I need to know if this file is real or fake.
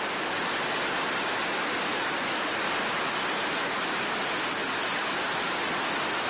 real